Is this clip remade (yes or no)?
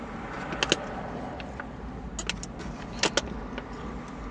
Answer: no